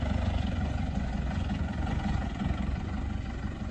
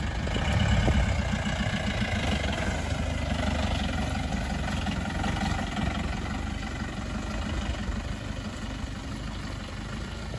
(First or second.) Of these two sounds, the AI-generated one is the first